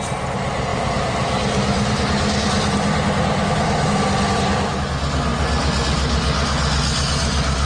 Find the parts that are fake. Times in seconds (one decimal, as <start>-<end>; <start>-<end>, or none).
none